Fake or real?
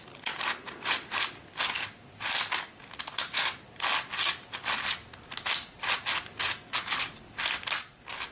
real